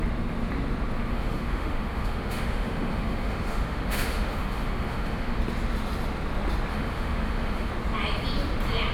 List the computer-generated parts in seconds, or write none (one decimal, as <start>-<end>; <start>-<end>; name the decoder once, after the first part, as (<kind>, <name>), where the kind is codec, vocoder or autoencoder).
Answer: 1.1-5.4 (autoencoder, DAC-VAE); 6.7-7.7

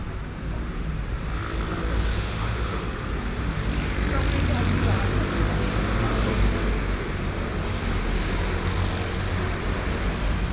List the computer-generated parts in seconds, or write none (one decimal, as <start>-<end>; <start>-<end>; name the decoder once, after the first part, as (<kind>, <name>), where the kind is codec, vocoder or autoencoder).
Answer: 2.1-2.8 (autoencoder, DAC-VAE)

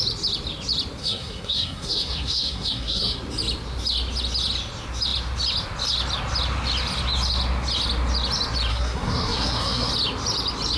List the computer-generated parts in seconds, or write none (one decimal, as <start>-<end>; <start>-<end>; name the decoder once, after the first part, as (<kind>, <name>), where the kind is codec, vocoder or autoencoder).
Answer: 1.0-3.2 (codec, SNAC); 8.7-9.9

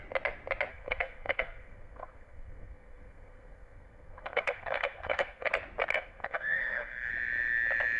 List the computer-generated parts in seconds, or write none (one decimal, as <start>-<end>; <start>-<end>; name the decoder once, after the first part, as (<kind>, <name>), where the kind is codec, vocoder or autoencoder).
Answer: 0.7-5.5 (codec, SNAC); 5.9-7.1